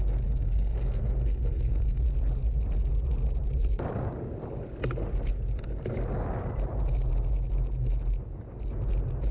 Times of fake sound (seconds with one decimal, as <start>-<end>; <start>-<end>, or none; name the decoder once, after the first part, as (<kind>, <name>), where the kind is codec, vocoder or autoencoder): 0.4-2.0 (codec, SNAC)